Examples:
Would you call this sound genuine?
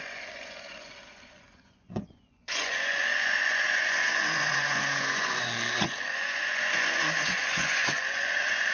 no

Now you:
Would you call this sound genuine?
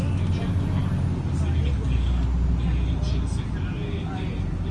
yes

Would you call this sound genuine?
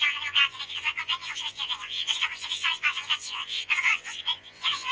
no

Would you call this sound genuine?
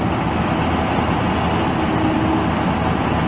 yes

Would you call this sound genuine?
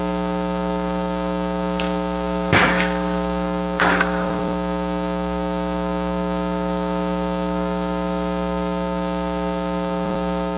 no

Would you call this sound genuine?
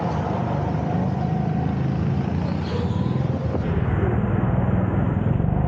yes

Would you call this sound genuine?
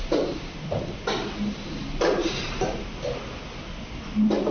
no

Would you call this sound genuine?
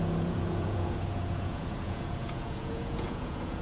no